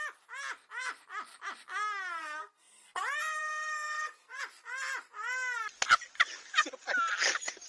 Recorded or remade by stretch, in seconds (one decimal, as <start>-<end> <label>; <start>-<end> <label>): 0.0-2.2 recorded; 2.2-3.0 remade; 3.0-3.4 recorded; 3.4-4.4 remade; 4.4-7.7 recorded